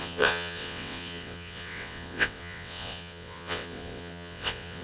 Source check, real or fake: fake